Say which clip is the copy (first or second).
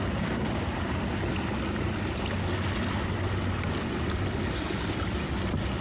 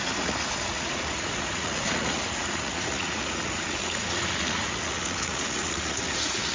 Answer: second